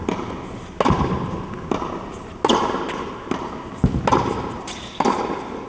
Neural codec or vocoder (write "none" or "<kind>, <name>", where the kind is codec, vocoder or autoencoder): none